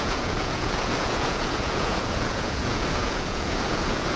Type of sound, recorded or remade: remade